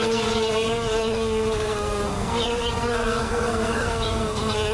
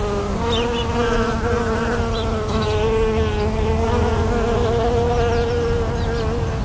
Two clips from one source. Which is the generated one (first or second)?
first